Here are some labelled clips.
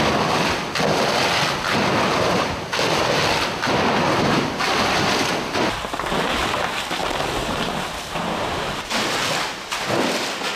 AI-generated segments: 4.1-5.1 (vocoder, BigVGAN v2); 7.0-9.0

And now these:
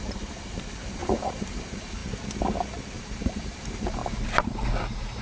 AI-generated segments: 0.0-2.0 (vocoder, BigVGAN v2); 3.0-5.2

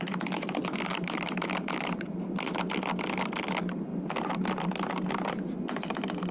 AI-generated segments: 0.9-2.2 (vocoder, BigVGAN v2)

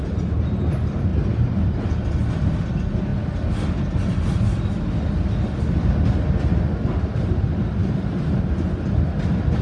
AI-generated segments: 1.1-1.9 (vocoder, BigVGAN v2); 7.8-8.7